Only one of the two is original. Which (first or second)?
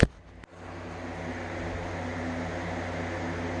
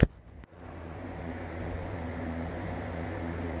first